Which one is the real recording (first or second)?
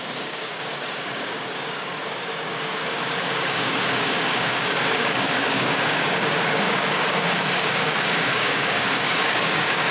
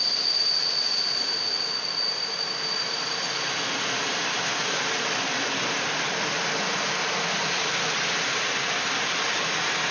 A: second